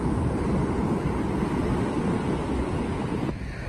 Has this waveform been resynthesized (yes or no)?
no